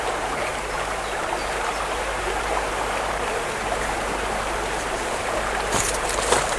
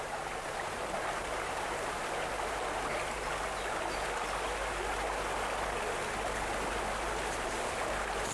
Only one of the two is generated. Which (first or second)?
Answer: first